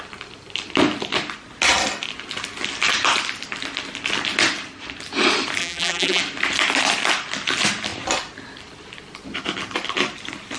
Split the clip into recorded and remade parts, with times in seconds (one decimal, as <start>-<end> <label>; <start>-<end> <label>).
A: 0.0-5.6 recorded; 5.6-6.2 remade; 6.2-10.6 recorded